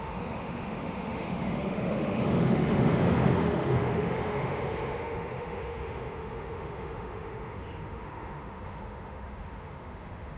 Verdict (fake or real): fake